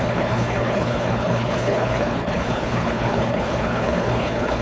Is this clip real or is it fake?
fake